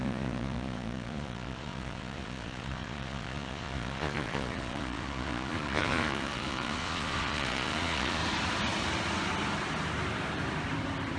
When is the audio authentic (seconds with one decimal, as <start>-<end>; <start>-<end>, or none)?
8.2-11.2